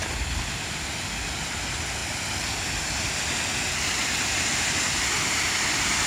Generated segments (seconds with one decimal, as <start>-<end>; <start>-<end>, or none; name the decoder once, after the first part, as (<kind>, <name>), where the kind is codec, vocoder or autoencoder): none